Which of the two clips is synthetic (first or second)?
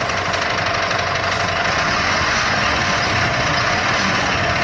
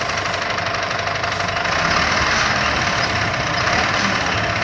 first